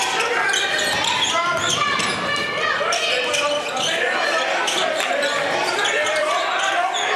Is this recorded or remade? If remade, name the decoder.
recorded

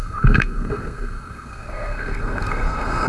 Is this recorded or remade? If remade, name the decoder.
remade, codec, SNAC